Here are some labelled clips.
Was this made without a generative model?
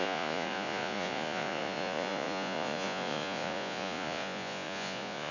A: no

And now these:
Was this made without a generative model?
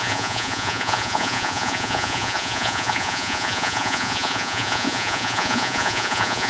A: no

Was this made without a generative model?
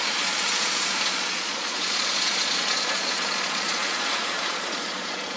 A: no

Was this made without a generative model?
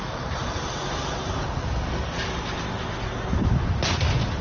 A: yes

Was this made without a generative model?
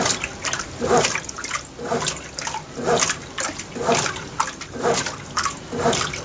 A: yes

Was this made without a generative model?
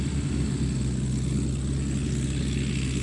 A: yes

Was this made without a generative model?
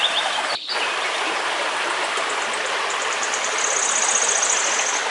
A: yes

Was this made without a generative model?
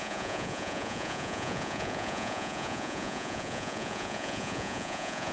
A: no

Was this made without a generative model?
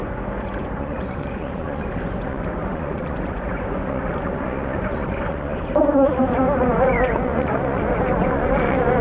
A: no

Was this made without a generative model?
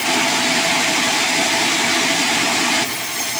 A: yes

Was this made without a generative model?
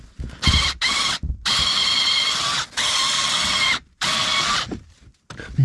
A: yes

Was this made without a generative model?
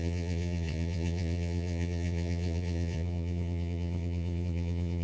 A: no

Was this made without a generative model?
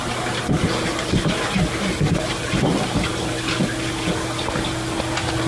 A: yes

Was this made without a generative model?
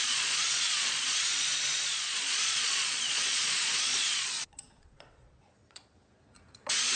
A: no